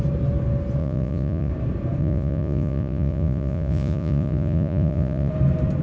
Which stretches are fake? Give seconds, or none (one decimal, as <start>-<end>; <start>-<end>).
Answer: 0.8-1.5; 2.0-5.3